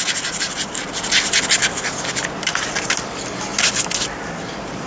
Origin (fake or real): real